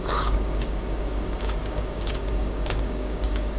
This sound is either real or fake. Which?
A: fake